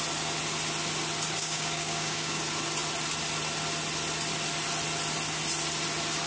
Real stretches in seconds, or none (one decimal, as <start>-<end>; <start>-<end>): 0.0-1.4; 2.4-6.3